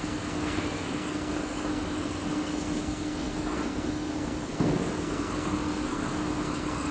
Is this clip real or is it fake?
fake